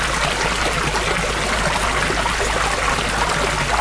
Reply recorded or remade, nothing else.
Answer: recorded